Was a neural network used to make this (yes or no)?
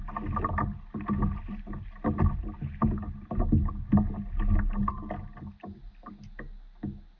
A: no